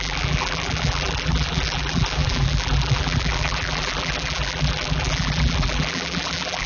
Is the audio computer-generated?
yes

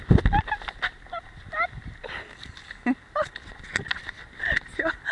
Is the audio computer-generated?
no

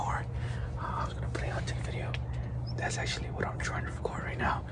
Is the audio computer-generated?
no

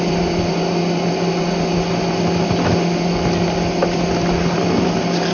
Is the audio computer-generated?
no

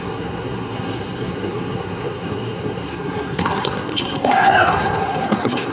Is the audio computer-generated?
yes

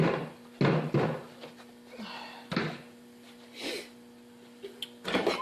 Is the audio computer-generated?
no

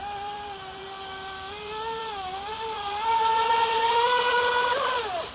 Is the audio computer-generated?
yes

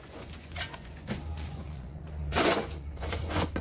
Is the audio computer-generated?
yes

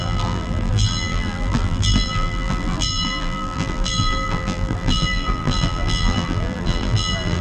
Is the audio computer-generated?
yes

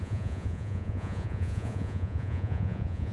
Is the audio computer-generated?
yes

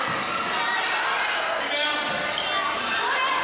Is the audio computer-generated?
no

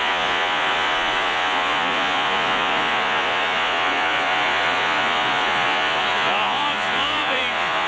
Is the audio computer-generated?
yes